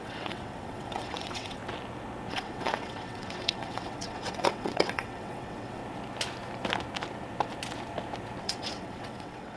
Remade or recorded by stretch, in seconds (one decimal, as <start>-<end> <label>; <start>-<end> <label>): 0.0-1.6 remade; 1.6-2.3 recorded; 2.3-5.8 remade; 5.8-8.4 recorded; 8.4-9.6 remade